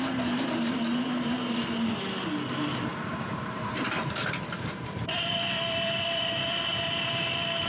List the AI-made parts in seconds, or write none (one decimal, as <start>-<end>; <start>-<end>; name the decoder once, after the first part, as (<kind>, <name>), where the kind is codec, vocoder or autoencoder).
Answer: 2.9-7.7 (vocoder, BigVGAN v2)